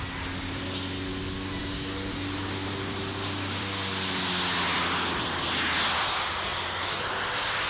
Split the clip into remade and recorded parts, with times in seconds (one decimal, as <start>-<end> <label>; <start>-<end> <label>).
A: 0.0-7.7 recorded